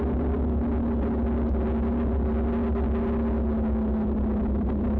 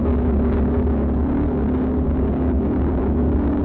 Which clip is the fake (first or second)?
second